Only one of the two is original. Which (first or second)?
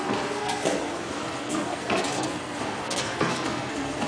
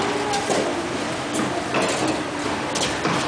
second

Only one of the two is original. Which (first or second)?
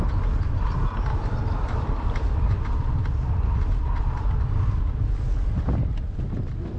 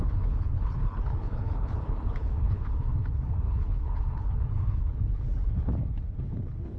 first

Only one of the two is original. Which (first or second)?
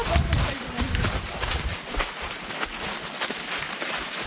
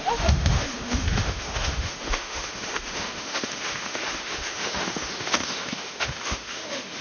first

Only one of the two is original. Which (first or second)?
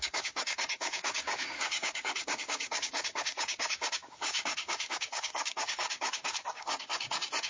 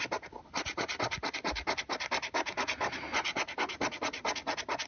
second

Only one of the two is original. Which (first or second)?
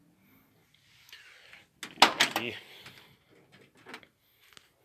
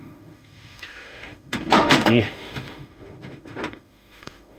first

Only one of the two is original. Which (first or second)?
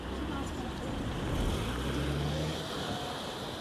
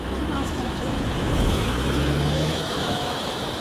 first